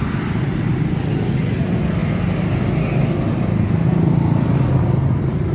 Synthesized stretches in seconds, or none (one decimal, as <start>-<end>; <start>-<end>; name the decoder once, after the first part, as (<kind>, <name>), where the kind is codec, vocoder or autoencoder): none